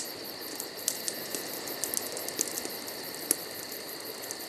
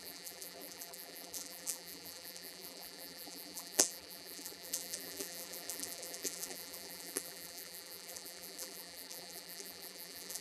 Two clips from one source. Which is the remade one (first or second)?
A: second